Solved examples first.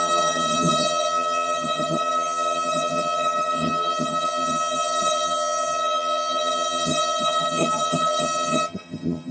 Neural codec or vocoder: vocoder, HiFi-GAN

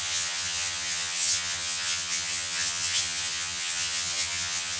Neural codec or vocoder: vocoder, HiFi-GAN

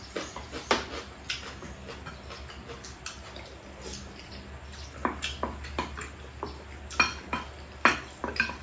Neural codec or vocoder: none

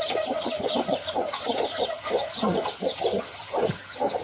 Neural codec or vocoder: vocoder, HiFi-GAN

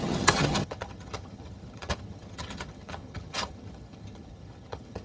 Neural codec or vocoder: vocoder, HiFi-GAN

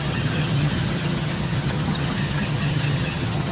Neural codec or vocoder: vocoder, HiFi-GAN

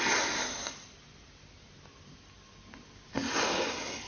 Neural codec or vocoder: none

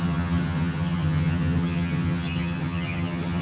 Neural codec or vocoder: vocoder, HiFi-GAN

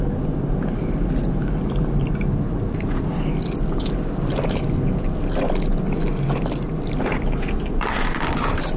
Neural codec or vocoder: none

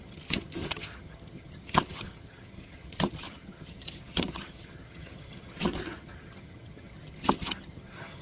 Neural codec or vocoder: vocoder, HiFi-GAN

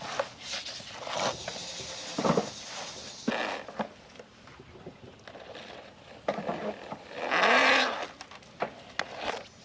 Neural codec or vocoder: none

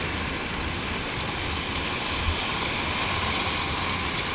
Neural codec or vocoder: none